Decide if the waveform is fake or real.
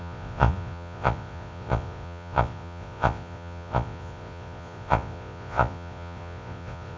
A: fake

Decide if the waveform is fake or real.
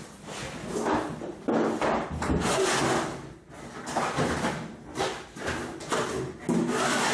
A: real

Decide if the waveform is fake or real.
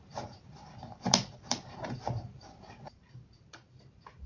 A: fake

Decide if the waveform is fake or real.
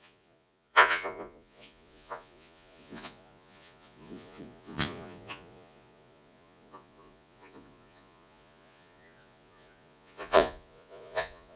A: fake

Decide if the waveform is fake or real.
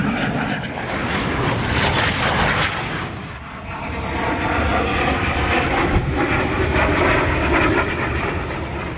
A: real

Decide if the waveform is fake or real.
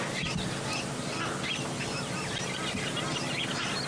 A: real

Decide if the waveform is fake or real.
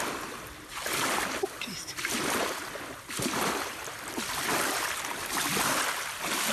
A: real